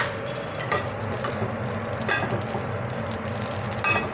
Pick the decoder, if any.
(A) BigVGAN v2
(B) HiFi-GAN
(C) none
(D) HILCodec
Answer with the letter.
C